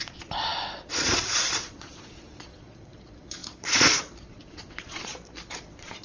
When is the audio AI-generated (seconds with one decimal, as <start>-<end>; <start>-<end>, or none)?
0.0-5.1; 5.6-6.0

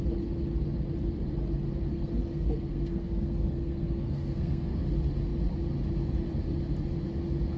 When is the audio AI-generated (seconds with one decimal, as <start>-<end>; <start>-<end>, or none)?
1.9-4.8

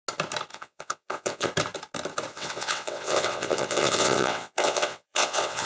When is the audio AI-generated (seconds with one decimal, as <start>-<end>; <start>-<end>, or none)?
0.5-1.5; 2.3-5.7